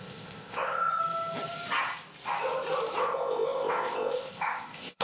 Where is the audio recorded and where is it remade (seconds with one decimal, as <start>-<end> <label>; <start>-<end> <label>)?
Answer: 0.0-1.0 remade; 1.0-3.0 recorded; 3.0-5.0 remade